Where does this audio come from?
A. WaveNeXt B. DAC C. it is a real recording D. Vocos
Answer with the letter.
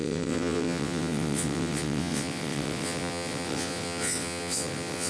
A